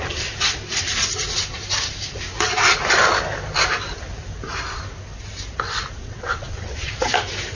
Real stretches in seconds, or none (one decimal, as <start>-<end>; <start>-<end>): 0.0-6.0; 6.9-7.6